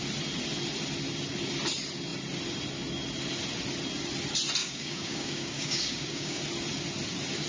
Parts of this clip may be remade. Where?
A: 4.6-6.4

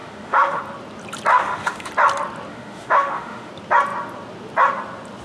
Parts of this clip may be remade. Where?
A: 0.0-0.6; 1.3-1.9; 2.5-3.5

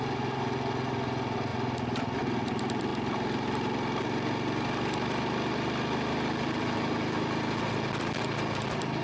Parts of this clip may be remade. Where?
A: 1.5-2.2